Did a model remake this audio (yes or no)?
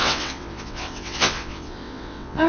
yes